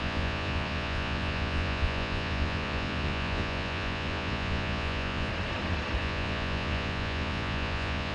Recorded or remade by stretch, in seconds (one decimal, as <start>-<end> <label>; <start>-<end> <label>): 0.0-5.3 remade; 5.3-6.0 recorded; 6.0-8.1 remade